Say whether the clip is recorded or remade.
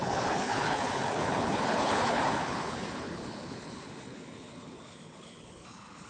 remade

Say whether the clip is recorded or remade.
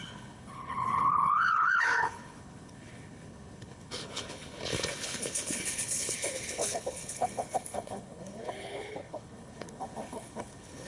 remade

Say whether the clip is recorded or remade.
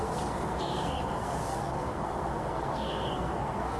remade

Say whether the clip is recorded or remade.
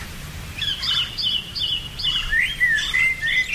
recorded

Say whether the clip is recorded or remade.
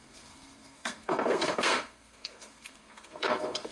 remade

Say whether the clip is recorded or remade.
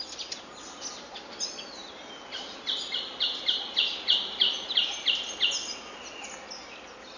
recorded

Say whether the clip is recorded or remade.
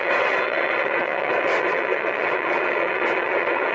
remade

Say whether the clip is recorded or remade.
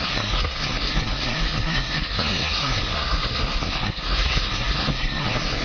remade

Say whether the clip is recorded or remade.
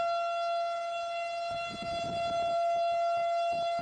recorded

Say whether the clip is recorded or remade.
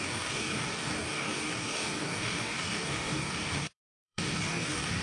remade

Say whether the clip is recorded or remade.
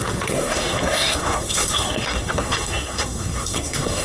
remade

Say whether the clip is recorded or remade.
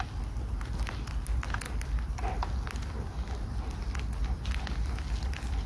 recorded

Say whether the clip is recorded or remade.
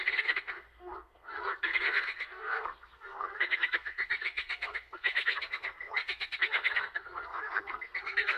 remade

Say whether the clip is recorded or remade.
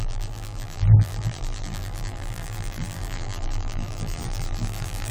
remade